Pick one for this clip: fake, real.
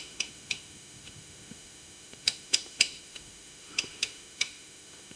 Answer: fake